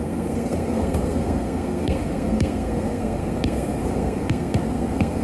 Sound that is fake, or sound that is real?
fake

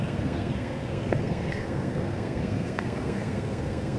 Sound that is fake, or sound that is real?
fake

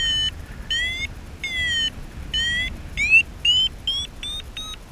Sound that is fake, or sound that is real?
real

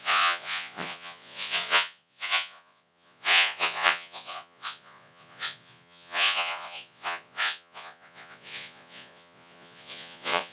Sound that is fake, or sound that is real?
fake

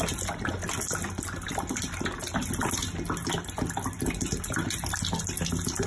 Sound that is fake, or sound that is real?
real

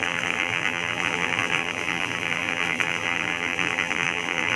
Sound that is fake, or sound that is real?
fake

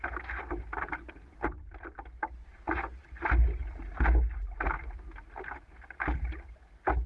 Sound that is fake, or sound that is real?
real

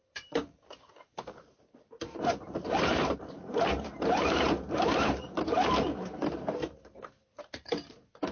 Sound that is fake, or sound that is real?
fake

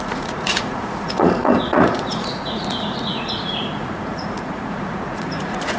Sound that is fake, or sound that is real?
fake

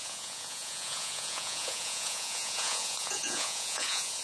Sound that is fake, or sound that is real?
fake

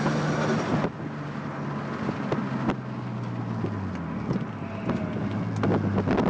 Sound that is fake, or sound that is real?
real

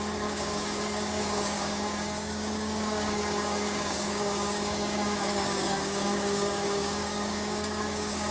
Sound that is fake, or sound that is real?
fake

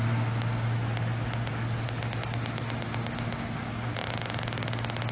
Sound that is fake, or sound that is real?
real